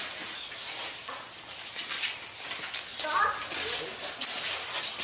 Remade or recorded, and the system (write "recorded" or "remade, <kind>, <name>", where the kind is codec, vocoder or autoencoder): recorded